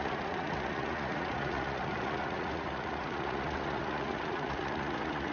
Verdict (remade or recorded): remade